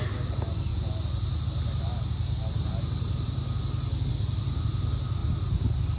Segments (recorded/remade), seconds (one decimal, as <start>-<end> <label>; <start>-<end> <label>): 0.0-6.0 recorded